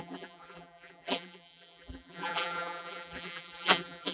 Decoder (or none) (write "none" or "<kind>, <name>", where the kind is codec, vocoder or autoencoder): vocoder, BigVGAN v2